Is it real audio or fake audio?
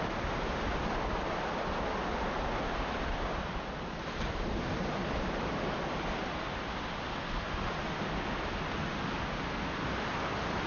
real